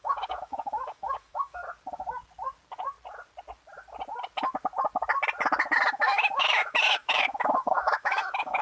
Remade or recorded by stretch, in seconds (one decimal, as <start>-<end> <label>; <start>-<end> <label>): 0.0-1.6 remade; 1.6-5.9 recorded; 5.9-8.6 remade